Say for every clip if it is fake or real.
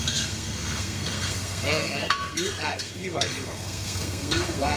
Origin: fake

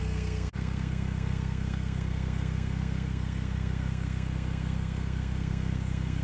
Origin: fake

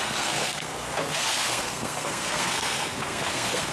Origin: fake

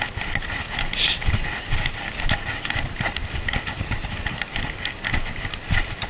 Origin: real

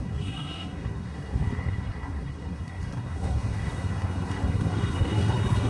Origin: fake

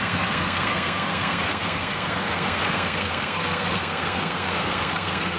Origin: fake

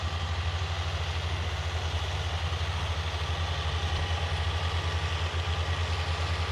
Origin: real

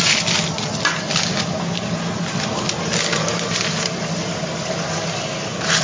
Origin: real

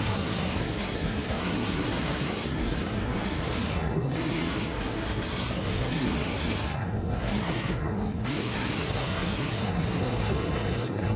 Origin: fake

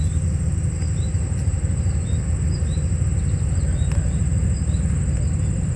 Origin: real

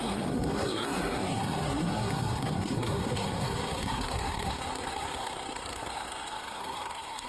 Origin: fake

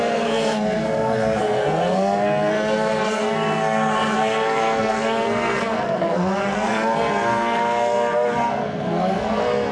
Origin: fake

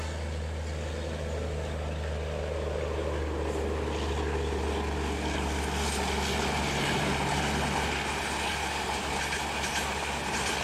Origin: real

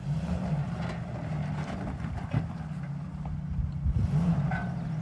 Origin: real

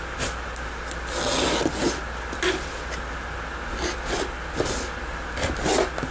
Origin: real